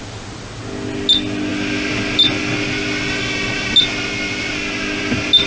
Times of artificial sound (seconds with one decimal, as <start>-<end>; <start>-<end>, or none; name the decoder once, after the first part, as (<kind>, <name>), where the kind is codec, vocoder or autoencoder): none